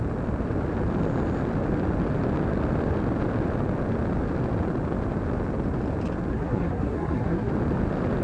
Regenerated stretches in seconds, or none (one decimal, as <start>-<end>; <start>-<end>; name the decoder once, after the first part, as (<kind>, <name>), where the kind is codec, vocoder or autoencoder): 6.3-7.5 (codec, SNAC)